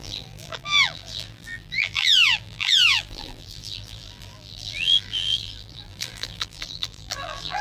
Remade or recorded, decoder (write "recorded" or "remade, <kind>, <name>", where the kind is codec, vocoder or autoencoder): remade, vocoder, BigVGAN v2